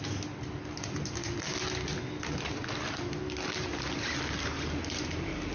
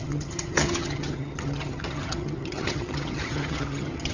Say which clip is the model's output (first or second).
second